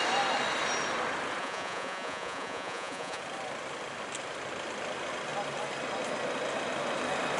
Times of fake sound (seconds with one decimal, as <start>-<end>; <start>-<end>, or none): 1.4-3.2